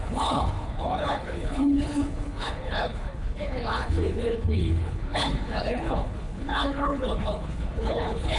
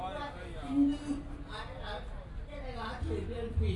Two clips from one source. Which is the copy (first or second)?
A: first